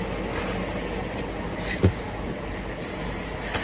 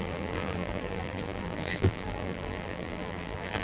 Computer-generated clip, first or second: second